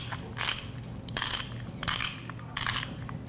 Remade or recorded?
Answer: recorded